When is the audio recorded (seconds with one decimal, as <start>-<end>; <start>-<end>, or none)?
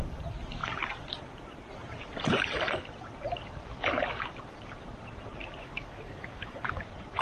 0.0-5.6; 6.8-7.2